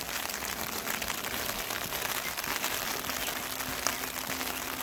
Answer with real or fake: real